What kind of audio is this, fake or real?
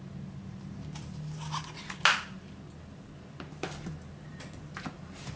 real